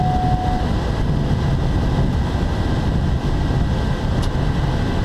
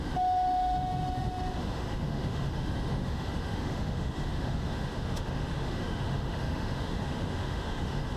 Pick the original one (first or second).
first